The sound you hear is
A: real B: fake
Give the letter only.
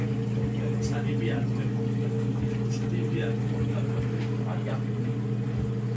A